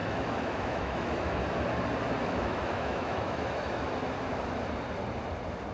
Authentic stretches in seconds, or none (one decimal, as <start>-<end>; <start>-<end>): 1.4-2.2; 3.9-5.7